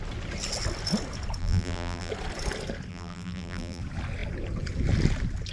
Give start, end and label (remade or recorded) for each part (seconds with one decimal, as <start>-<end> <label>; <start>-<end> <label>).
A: 0.0-1.4 recorded; 1.4-2.1 remade; 2.1-2.9 recorded; 2.9-3.8 remade; 3.8-5.5 recorded